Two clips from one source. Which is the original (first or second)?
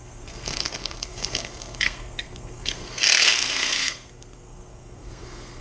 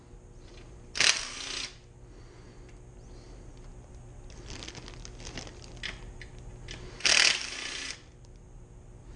second